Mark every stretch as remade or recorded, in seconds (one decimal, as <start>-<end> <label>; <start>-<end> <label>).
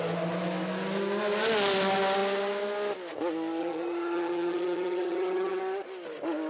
0.0-3.6 recorded; 3.6-5.6 remade; 5.6-6.5 recorded